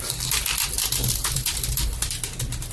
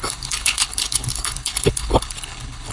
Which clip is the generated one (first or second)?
second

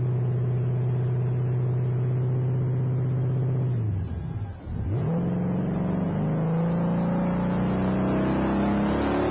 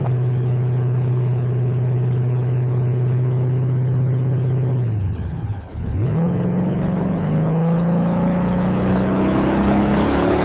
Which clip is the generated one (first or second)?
second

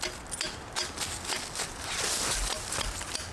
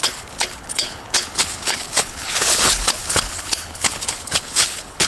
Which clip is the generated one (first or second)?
second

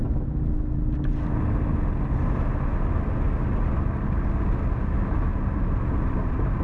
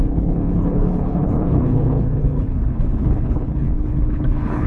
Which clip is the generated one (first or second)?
second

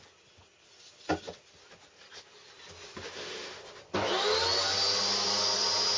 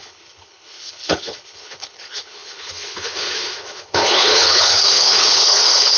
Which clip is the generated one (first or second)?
second